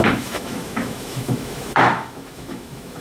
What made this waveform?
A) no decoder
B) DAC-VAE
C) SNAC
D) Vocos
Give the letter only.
B